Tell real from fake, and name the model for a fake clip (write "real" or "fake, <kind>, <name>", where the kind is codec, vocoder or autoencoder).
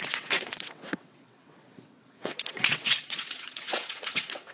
fake, vocoder, WaveNeXt